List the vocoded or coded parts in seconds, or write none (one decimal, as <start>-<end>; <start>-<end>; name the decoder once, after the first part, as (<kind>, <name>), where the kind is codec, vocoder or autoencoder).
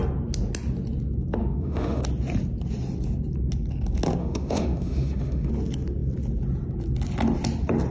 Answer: 1.4-2.0 (autoencoder, DAC-VAE); 4.2-5.5